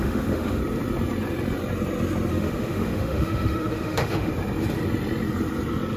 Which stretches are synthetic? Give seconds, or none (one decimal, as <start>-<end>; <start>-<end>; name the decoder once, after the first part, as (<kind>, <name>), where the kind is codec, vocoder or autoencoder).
0.0-0.6 (autoencoder, DAC-VAE); 2.3-4.3